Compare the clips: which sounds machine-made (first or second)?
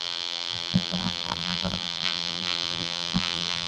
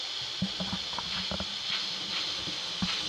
first